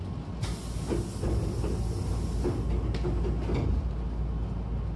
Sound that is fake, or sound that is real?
real